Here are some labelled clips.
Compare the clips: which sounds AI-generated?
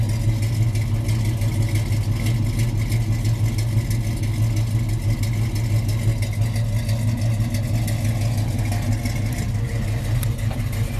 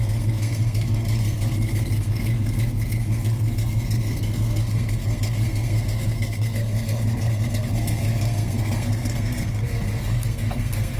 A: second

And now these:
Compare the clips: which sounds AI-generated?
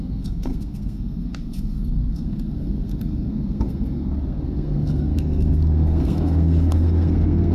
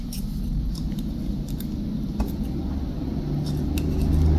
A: first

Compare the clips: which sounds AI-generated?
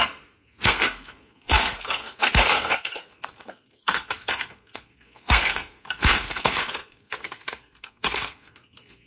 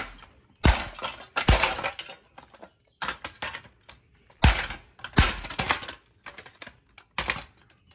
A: first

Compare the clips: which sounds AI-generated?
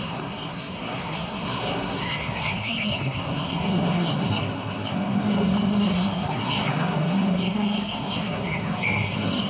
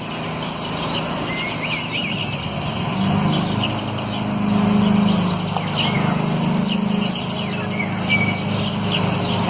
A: first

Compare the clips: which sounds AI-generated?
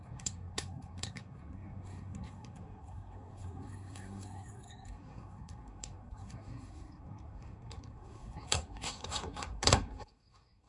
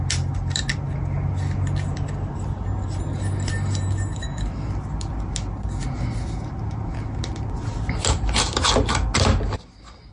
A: first